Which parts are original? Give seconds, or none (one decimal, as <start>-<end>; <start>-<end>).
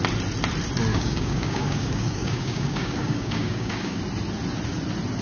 0.0-0.9; 4.0-5.2